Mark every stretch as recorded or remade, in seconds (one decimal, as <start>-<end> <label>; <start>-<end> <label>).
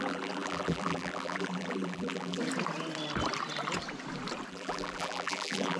0.0-2.4 remade; 2.4-4.5 recorded; 4.5-5.8 remade